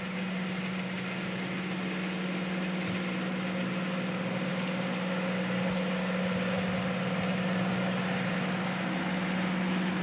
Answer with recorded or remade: recorded